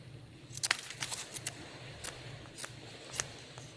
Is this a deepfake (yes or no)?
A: no